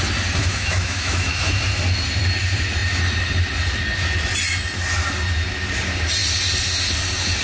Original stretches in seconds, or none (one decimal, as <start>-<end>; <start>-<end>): 0.0-0.4; 1.5-7.4